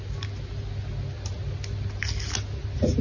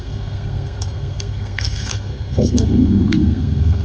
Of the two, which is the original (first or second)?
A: first